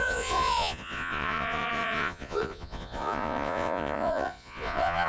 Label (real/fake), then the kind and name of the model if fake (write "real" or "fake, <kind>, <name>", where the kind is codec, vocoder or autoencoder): fake, vocoder, Vocos